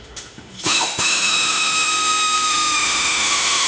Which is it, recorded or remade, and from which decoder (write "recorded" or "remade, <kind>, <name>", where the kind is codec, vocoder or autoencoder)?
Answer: remade, autoencoder, DAC-VAE